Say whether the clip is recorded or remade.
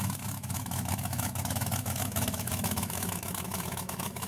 remade